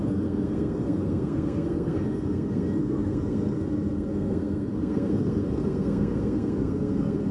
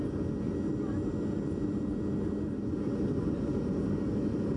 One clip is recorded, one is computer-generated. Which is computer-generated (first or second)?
first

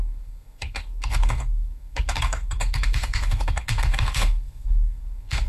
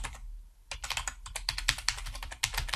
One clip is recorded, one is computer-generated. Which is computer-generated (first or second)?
first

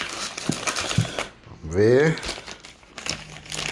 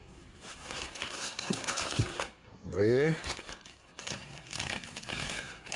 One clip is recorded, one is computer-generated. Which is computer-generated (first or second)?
second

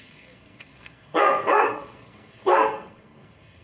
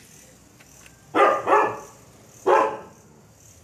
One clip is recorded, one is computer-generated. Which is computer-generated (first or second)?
first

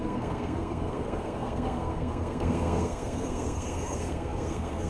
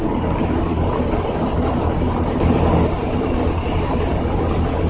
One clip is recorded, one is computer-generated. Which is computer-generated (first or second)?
first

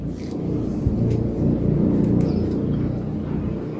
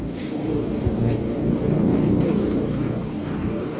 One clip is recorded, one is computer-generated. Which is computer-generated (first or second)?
second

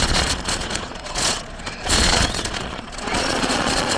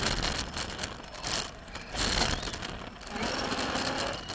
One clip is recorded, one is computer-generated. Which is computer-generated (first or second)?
first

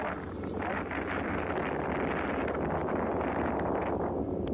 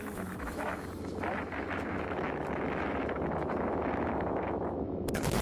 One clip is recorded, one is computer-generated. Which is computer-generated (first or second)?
second